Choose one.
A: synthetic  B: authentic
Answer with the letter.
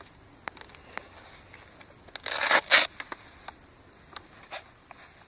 B